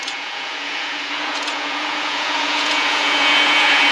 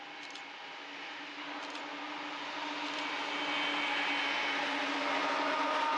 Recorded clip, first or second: second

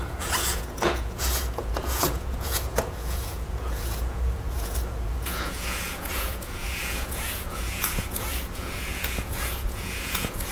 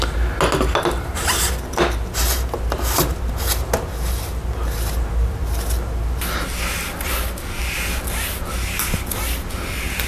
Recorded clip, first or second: second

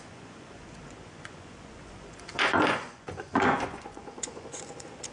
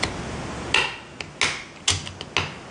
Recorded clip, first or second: second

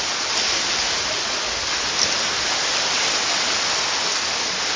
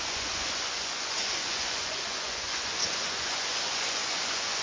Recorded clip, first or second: first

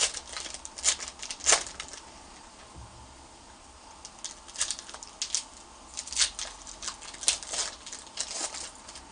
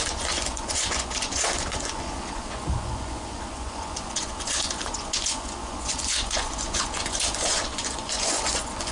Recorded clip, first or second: first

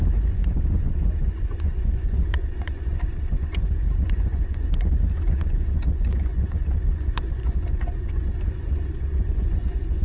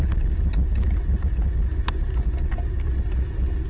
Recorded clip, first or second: second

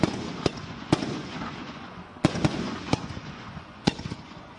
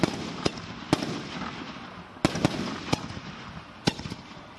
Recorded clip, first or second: second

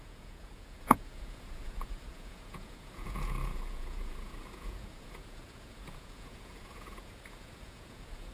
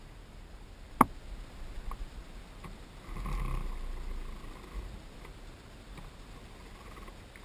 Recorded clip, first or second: second